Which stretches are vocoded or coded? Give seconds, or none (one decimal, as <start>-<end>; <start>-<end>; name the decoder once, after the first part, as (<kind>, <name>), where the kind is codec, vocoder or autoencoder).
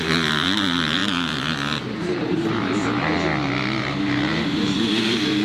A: 0.0-3.1 (vocoder, BigVGAN v2); 3.8-5.4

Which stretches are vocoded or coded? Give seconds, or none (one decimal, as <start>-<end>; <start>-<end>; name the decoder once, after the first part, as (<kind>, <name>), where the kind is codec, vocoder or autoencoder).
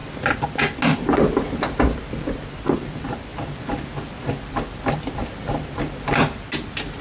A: none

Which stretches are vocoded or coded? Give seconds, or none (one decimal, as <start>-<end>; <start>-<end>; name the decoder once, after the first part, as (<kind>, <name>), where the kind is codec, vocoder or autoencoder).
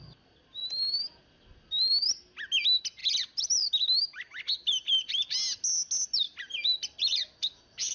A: none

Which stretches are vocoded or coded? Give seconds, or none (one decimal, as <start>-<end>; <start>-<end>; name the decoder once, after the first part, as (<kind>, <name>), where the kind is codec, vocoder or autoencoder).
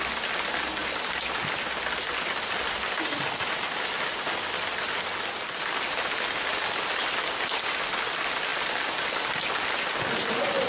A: none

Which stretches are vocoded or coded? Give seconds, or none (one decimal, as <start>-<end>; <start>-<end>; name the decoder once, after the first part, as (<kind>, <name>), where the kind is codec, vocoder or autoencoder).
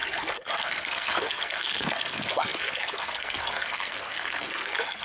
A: 0.0-5.0 (codec, SNAC)